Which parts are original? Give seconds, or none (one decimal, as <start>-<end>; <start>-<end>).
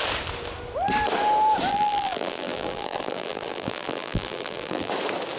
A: 0.0-1.7; 4.9-5.4